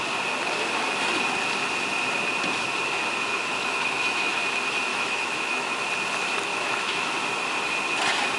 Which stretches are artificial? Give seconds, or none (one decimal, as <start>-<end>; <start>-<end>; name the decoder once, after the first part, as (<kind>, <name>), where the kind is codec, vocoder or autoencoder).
3.3-4.3 (autoencoder, DAC-VAE); 4.9-5.7; 6.5-7.1